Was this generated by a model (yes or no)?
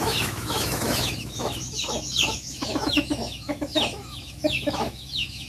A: yes